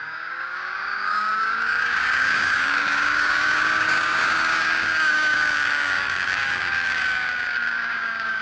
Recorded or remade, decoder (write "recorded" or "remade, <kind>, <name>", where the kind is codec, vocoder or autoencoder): remade, codec, DAC